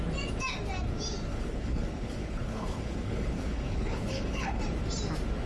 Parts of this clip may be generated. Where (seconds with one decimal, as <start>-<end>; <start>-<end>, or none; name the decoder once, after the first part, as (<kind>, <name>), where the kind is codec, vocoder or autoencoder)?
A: 1.3-4.6 (codec, HILCodec)

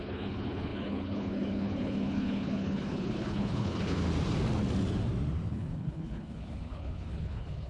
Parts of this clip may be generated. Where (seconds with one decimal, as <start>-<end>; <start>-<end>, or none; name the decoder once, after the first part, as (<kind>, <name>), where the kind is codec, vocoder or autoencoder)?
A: 0.0-4.0 (codec, HILCodec); 5.5-7.7

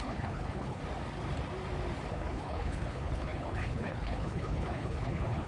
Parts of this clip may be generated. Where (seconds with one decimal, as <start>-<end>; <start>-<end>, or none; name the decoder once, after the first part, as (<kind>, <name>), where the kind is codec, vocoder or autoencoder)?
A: 0.0-0.8 (codec, HILCodec); 2.1-5.5